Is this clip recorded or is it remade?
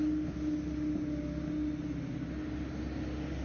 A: recorded